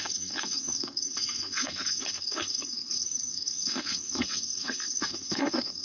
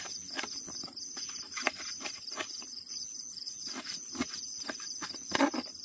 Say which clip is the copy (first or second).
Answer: first